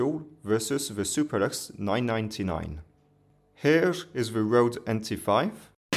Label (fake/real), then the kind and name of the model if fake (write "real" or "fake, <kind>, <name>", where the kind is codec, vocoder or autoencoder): real